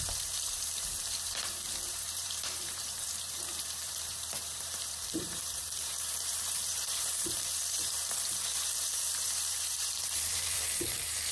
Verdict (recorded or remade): remade